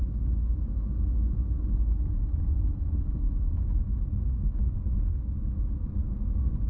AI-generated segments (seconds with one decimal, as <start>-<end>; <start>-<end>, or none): 0.5-3.8